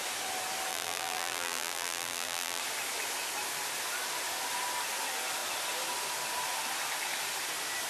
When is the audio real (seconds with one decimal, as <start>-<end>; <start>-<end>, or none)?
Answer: 0.0-0.7; 2.6-7.9

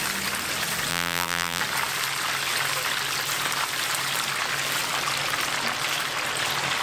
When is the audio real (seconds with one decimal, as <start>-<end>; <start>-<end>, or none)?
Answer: 0.0-0.9; 1.6-6.8

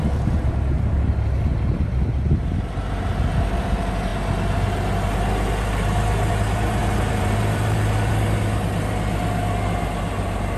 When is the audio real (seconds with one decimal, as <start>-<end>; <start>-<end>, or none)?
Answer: 0.0-6.8; 8.1-10.6

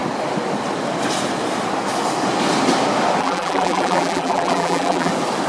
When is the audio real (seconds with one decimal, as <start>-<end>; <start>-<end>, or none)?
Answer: 0.0-3.2; 5.1-5.5

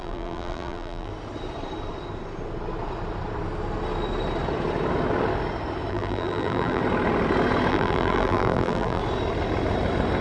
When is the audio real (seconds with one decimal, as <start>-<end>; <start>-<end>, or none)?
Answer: 1.1-5.9; 6.8-7.7; 9.0-10.2

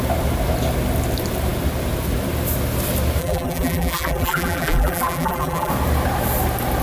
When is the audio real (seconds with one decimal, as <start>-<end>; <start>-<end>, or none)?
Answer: 0.0-3.2; 5.7-6.8

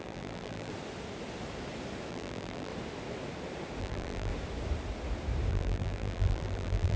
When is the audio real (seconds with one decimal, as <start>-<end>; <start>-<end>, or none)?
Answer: 0.7-2.1; 2.7-3.8; 4.3-5.5

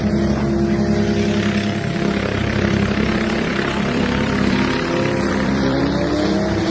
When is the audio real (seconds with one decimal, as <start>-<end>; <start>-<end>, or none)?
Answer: 0.0-2.4; 5.8-6.7